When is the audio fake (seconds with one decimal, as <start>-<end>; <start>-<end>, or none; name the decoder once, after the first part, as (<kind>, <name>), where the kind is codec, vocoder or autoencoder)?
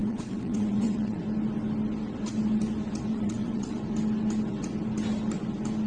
0.0-1.2 (vocoder, WaveNeXt); 3.1-3.8